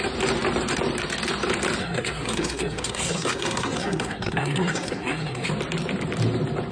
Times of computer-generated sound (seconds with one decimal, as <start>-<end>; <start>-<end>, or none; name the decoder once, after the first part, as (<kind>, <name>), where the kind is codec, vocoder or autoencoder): 1.8-5.5 (codec, SNAC)